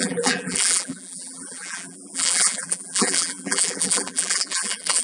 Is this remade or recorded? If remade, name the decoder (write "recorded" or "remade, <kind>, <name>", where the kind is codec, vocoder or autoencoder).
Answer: remade, vocoder, BigVGAN v2